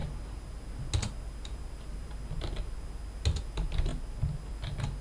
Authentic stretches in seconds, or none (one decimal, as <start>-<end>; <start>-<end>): 0.0-5.0